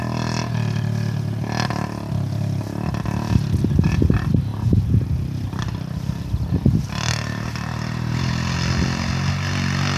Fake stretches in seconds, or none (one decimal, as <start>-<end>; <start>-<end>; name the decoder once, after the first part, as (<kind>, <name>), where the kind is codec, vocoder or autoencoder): 4.5-5.6 (vocoder, BigVGAN v2)